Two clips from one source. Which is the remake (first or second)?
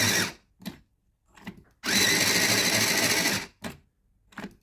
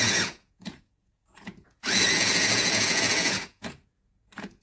second